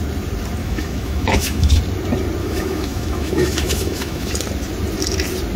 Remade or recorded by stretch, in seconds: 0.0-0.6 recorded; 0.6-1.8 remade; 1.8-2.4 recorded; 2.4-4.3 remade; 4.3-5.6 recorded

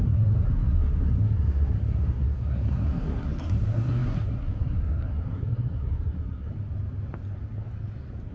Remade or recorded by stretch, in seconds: 0.0-6.5 remade; 6.5-8.3 recorded

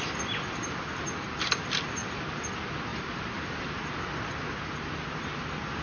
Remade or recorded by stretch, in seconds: 0.0-2.0 recorded; 2.0-2.5 remade; 2.5-2.9 recorded; 2.9-3.8 remade; 3.8-5.8 recorded

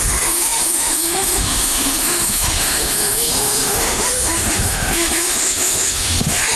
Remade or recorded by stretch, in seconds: 0.0-6.6 remade

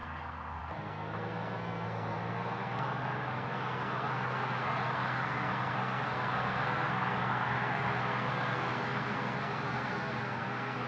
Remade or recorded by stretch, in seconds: 0.0-10.9 remade

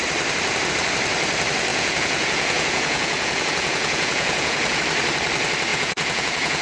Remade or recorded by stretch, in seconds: 0.0-1.7 recorded; 1.7-4.8 remade; 4.8-5.7 recorded; 5.7-6.6 remade